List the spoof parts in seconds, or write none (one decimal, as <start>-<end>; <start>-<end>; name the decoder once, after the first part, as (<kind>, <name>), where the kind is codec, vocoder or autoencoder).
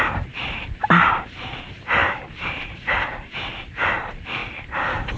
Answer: 0.0-4.4 (vocoder, BigVGAN v2)